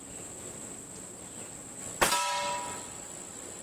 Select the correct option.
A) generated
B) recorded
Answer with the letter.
B